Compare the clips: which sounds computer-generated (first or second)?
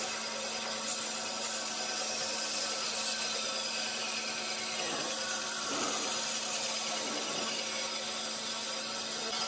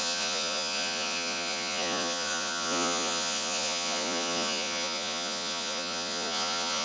second